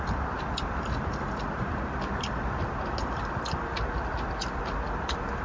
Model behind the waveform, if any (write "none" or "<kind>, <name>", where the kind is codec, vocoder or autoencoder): none